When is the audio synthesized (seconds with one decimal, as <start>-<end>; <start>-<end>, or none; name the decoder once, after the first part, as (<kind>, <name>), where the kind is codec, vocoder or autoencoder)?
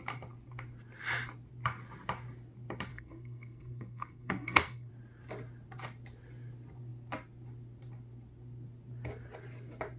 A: 2.9-4.9 (codec, SNAC)